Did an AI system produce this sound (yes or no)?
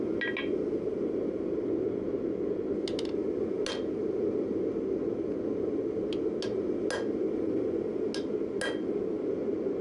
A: no